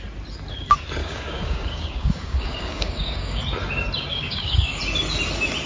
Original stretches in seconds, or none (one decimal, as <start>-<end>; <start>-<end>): 0.0-1.0; 3.4-4.1; 4.8-5.7